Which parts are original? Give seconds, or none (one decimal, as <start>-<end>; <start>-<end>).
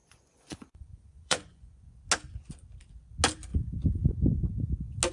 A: 2.0-5.1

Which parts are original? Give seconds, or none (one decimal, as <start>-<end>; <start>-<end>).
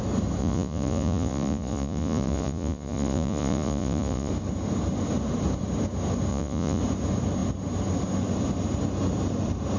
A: 0.0-0.4; 4.3-6.3; 6.8-9.8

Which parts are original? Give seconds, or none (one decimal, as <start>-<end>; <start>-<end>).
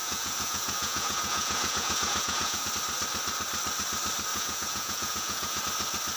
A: 2.7-4.3; 5.6-6.2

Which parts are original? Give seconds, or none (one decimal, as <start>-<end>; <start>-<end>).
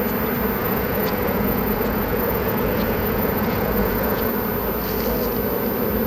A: 0.0-0.6; 4.3-6.1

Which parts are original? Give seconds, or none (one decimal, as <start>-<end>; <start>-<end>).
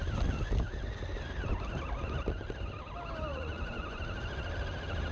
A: 0.0-3.3; 4.0-5.1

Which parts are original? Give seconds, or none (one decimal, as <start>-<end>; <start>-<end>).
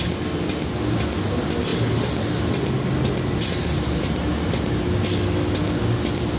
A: 0.0-6.4